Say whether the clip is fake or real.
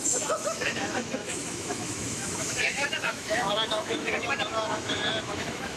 fake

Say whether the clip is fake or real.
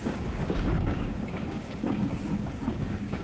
fake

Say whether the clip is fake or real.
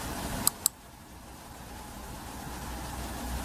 real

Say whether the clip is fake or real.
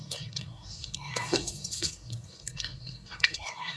fake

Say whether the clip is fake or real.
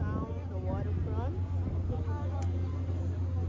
real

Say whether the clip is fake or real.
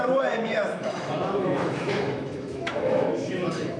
fake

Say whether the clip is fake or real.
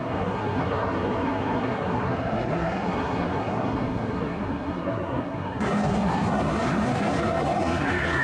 fake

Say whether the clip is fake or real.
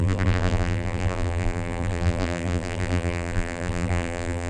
fake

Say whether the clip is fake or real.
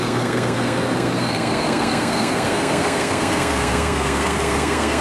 fake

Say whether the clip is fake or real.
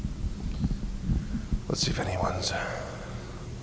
real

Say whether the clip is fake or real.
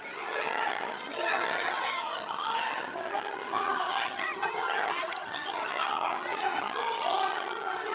fake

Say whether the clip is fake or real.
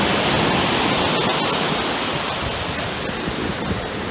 real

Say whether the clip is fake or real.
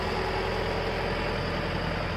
real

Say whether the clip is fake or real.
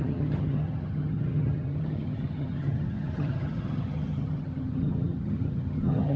fake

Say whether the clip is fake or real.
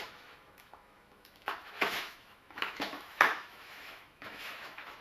fake